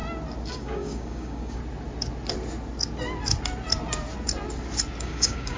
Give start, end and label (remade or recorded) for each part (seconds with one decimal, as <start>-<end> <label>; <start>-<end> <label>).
0.0-0.5 recorded; 0.5-1.6 remade; 1.6-5.0 recorded; 5.0-5.6 remade